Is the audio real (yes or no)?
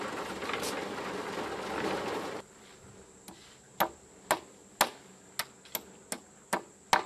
yes